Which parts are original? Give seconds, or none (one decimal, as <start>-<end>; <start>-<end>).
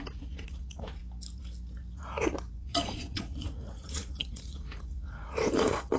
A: 1.0-2.5